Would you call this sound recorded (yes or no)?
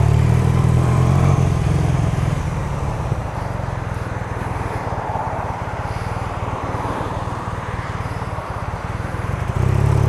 no